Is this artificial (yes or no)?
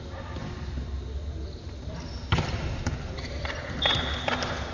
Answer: no